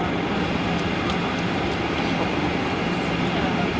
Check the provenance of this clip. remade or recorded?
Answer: recorded